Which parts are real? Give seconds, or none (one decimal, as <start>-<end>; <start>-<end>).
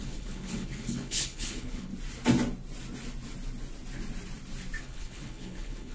1.9-4.8